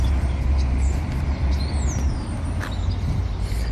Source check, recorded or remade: recorded